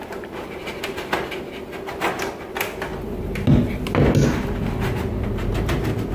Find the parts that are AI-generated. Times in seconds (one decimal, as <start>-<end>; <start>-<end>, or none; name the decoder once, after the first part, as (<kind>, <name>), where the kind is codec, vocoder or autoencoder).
none